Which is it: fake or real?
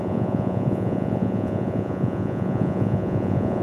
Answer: fake